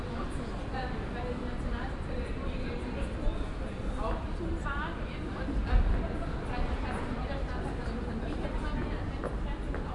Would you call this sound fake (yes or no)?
no